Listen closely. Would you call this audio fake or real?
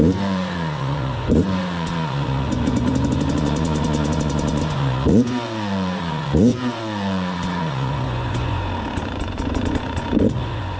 fake